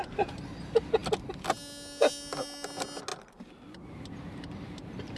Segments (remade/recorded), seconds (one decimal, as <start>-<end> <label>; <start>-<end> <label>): 0.0-5.2 recorded